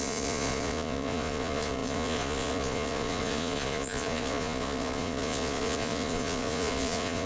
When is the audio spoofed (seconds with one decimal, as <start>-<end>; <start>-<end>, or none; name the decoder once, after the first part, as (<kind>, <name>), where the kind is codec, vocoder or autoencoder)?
0.0-7.3 (vocoder, Vocos)